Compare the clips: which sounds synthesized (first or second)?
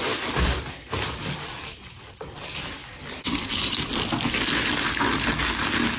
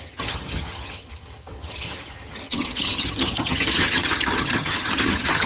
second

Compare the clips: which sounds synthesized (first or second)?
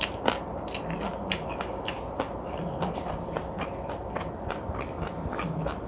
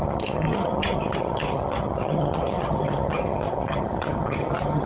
second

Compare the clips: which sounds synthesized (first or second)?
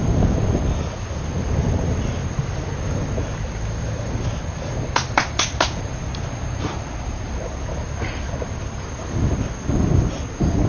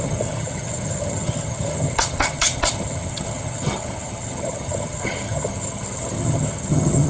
second